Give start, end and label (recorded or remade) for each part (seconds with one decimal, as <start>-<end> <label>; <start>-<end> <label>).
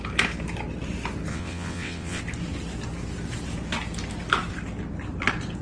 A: 0.0-1.3 recorded; 1.3-2.2 remade; 2.2-5.6 recorded